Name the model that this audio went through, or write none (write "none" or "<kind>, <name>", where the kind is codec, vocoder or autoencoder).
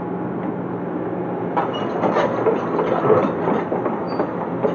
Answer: none